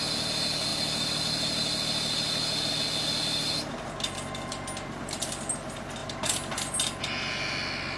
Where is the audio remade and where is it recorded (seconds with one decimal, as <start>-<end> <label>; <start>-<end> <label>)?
0.0-8.0 recorded